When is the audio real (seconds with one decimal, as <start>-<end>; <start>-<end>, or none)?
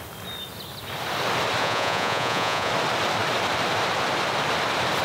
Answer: 0.0-1.6; 2.7-5.0